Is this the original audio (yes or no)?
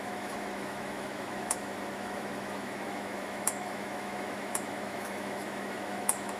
no